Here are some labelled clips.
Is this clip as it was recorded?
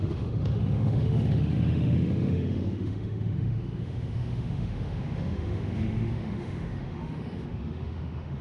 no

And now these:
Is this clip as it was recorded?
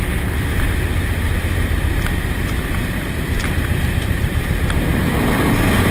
no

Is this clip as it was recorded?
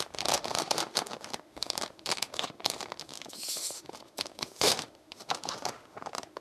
no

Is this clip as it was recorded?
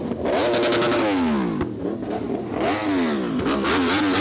yes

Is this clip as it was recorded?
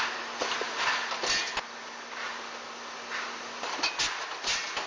yes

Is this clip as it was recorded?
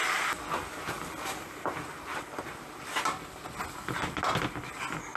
yes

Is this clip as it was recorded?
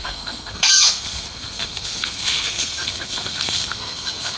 no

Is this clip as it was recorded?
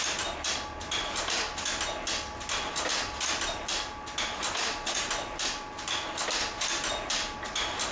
yes